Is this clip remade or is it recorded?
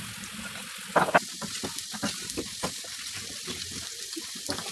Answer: recorded